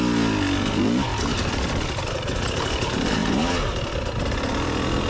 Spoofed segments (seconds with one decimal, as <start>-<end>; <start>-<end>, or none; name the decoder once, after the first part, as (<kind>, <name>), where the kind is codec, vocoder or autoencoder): none